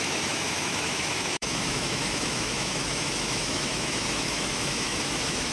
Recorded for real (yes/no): no